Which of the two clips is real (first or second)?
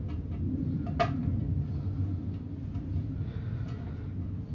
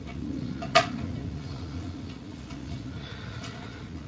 first